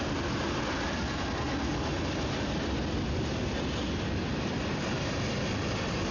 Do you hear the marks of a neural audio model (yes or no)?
no